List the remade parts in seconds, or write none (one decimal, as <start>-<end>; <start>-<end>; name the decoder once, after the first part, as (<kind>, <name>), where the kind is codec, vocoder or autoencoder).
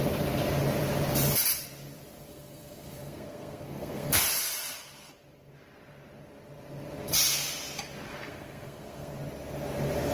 2.3-4.2 (codec, SNAC); 8.1-9.1